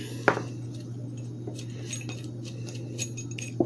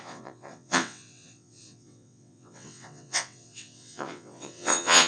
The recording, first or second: first